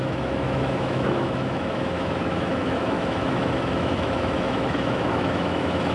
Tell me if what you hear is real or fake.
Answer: fake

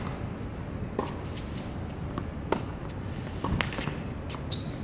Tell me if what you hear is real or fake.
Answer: real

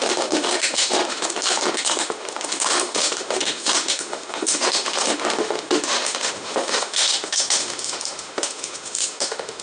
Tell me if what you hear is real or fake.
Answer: fake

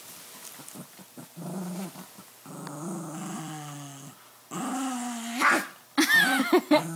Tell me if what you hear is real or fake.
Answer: real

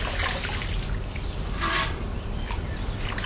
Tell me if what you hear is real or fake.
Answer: real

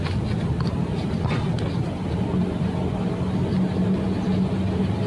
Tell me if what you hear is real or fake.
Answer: real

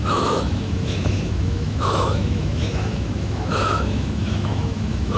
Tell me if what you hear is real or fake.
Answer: fake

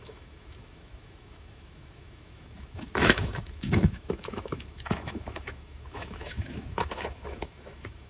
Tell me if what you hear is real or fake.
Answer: fake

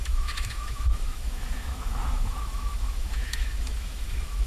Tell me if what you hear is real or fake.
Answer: fake